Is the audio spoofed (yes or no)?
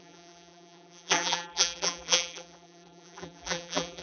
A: yes